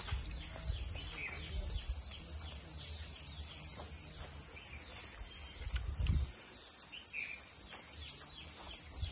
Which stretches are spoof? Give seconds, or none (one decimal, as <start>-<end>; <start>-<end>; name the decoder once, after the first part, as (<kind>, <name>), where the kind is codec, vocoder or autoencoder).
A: none